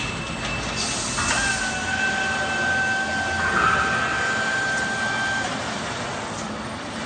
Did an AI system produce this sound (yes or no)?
no